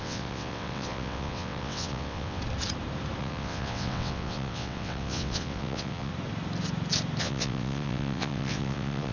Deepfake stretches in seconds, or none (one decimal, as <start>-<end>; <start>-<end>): 0.0-2.4; 3.2-6.1; 7.2-9.1